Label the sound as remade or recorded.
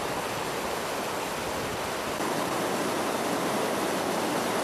recorded